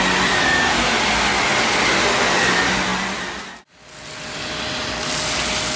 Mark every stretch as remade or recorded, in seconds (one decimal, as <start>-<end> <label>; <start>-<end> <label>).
0.0-5.8 recorded